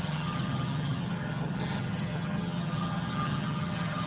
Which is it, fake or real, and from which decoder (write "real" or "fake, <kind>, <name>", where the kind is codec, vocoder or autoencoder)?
fake, vocoder, HiFi-GAN